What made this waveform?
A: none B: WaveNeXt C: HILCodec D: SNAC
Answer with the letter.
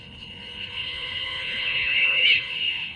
C